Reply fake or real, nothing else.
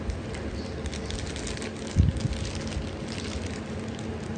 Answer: real